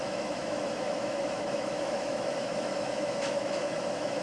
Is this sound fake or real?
fake